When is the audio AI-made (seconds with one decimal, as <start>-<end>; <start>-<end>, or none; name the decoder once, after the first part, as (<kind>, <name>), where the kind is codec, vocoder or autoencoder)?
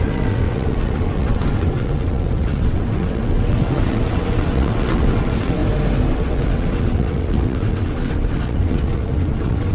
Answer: 0.0-5.6 (vocoder, WaveNeXt); 6.1-9.7